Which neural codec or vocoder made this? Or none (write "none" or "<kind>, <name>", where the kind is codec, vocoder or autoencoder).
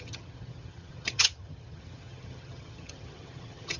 vocoder, HiFi-GAN